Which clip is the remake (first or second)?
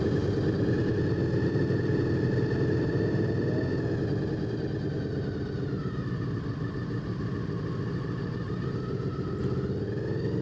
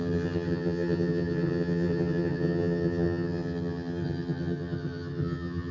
second